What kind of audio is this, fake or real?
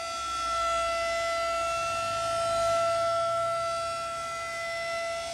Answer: real